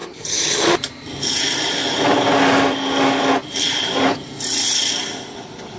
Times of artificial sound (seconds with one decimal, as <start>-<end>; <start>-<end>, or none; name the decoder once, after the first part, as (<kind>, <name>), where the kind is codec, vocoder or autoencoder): 0.0-0.7 (codec, HILCodec)